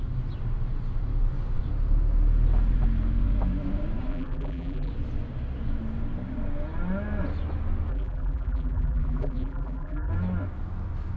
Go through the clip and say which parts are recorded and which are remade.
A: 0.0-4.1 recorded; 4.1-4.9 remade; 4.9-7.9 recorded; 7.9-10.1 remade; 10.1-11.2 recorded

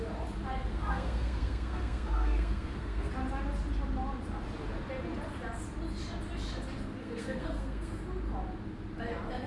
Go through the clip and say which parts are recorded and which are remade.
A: 0.0-0.7 recorded; 0.7-3.1 remade; 3.1-7.0 recorded; 7.0-8.0 remade; 8.0-9.5 recorded

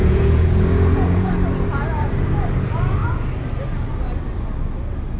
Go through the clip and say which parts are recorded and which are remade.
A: 0.0-1.3 remade; 1.3-5.2 recorded

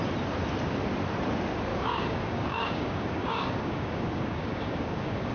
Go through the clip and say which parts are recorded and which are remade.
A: 0.0-1.7 recorded; 1.7-5.3 remade

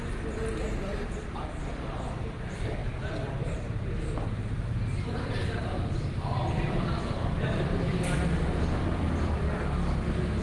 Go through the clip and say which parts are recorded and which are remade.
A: 0.0-2.8 recorded; 2.8-4.0 remade; 4.0-4.4 recorded; 4.4-9.0 remade; 9.0-10.4 recorded

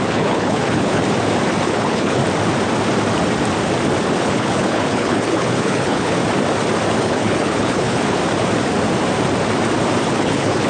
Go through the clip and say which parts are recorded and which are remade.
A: 0.0-1.0 remade; 1.0-1.6 recorded; 1.6-2.2 remade; 2.2-4.1 recorded; 4.1-6.2 remade; 6.2-7.0 recorded; 7.0-8.2 remade; 8.2-10.1 recorded; 10.1-10.7 remade

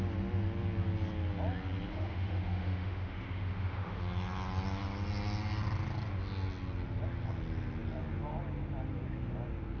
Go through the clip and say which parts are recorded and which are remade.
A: 0.0-1.9 recorded; 1.9-4.0 remade; 4.0-9.8 recorded